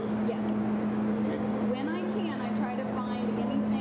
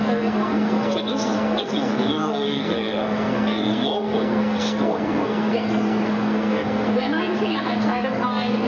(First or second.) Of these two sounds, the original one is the first